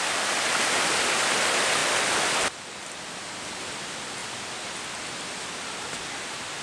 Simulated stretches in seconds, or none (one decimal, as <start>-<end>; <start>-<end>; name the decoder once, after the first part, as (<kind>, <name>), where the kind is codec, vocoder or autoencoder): none